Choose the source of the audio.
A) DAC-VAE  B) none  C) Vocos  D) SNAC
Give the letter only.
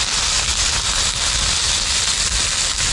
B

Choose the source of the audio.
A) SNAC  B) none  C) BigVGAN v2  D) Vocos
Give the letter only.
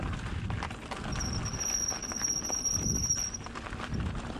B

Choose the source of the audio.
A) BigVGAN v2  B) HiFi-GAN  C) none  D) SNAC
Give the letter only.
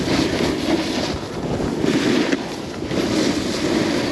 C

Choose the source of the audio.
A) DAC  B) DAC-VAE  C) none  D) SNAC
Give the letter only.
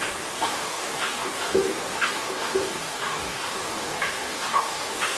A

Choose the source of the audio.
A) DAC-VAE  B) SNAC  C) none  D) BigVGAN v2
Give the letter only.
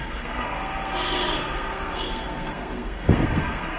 B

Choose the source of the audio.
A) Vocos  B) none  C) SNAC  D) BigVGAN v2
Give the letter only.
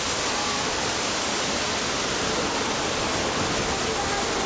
B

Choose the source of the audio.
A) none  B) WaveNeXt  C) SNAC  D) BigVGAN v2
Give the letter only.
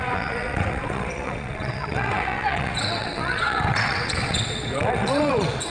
B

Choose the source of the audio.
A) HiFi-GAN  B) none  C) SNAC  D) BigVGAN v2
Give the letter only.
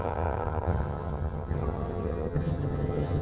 A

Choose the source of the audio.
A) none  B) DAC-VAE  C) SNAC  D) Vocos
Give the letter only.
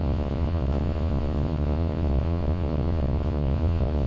D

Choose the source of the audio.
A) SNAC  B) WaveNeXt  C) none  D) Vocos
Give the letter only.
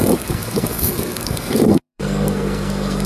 A